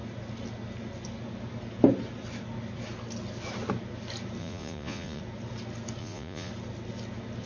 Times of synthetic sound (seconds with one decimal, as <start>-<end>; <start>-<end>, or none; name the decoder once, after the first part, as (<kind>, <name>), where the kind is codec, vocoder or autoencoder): 4.4-5.2 (vocoder, Vocos); 6.0-6.5